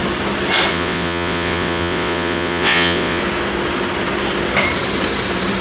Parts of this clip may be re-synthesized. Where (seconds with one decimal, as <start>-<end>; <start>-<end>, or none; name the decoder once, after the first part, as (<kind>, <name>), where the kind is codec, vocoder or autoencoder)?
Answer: 0.7-3.2 (vocoder, WaveNeXt)